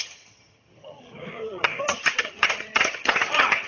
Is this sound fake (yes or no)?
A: yes